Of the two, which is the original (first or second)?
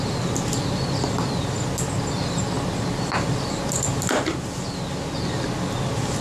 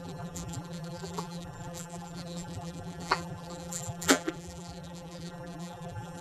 first